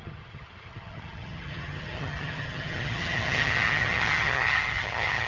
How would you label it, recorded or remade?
remade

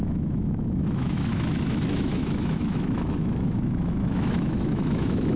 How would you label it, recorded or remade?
remade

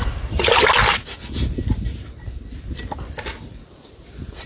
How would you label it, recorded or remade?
recorded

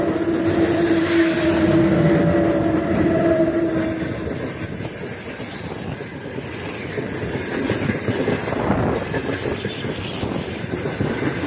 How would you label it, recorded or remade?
recorded